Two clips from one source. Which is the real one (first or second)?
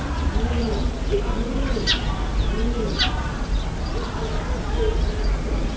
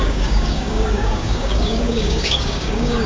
first